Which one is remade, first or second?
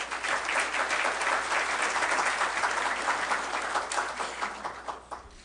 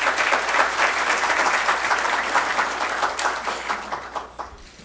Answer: second